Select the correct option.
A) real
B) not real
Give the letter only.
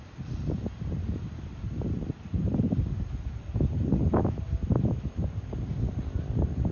A